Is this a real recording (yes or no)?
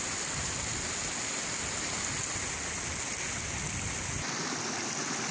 yes